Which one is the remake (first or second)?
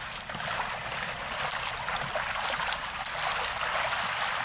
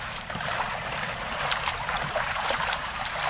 second